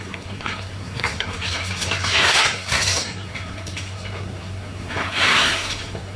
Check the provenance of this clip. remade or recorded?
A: remade